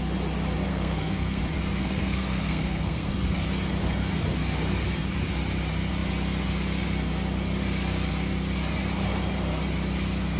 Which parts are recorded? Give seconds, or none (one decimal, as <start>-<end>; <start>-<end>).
0.0-0.7; 1.4-1.8; 3.1-10.4